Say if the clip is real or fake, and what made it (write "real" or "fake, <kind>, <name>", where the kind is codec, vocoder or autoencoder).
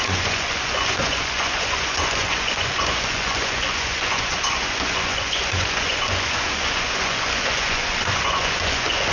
fake, vocoder, Vocos